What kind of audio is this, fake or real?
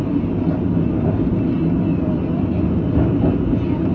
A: real